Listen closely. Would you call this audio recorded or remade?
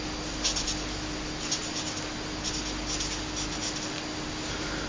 recorded